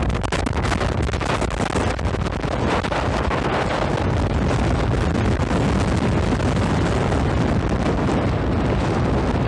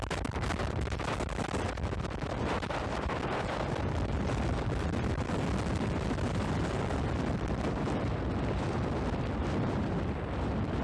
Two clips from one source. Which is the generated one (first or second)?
second